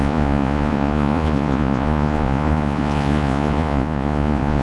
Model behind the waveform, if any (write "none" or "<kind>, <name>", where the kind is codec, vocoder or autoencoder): vocoder, Vocos